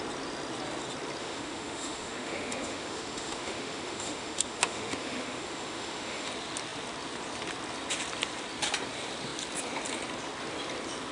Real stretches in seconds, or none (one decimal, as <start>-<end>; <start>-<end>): 0.0-1.2; 6.3-11.1